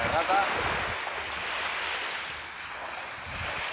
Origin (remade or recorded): recorded